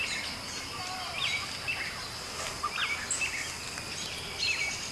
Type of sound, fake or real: real